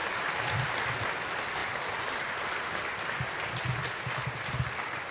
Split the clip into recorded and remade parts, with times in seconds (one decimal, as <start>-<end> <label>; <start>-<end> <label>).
0.0-5.1 recorded